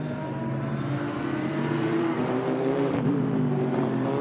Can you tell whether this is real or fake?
fake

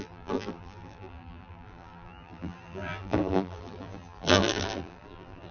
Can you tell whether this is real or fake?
fake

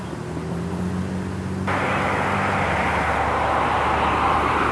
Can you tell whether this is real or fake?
real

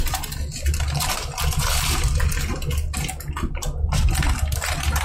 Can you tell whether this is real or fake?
real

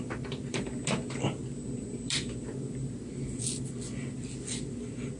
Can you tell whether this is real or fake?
real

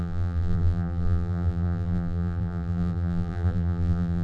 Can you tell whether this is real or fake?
fake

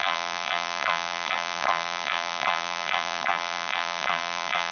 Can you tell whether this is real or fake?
fake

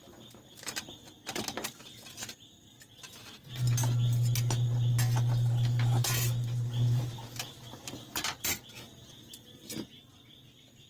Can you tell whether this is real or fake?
real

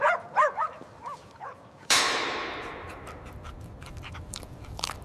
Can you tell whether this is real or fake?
fake